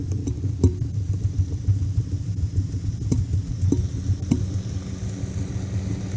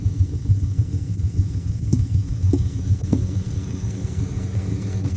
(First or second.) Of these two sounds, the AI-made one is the second